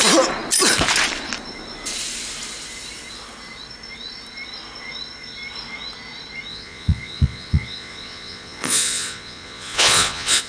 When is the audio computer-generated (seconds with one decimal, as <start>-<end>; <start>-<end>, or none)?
6.5-10.5